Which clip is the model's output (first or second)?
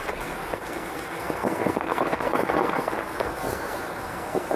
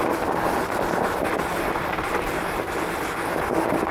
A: first